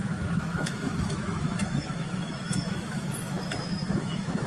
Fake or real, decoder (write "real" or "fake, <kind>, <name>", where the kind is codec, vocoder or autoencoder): fake, autoencoder, DAC-VAE